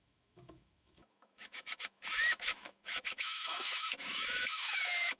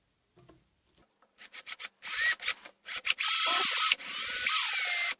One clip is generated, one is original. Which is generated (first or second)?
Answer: first